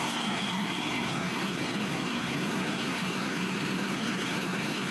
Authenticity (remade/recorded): remade